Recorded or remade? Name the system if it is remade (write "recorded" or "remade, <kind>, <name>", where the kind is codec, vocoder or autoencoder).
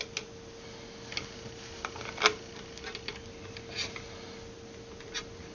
recorded